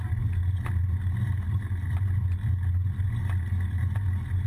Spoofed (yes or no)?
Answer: no